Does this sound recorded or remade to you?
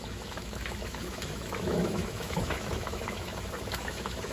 remade